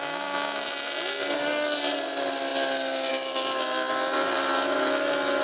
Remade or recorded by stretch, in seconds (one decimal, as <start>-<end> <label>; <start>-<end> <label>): 0.0-5.4 recorded